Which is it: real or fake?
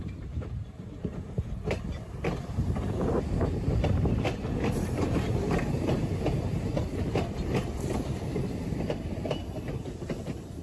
fake